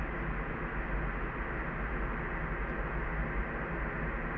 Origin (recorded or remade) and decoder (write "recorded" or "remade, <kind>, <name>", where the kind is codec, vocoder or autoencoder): recorded